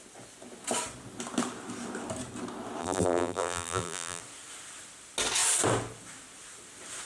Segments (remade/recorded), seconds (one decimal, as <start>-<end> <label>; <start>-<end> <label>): 0.0-2.8 recorded; 2.8-4.2 remade; 4.2-7.1 recorded